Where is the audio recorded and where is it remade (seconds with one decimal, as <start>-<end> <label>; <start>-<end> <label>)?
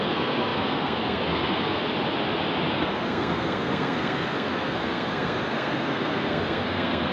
0.0-1.8 remade; 1.8-2.7 recorded; 2.7-7.1 remade